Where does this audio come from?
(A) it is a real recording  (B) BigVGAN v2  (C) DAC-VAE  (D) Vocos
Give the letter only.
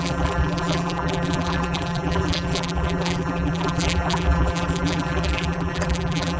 B